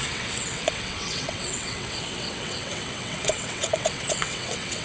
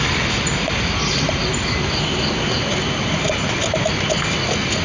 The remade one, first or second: first